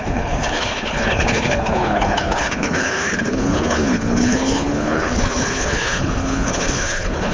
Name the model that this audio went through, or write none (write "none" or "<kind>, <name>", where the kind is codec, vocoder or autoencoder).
codec, HILCodec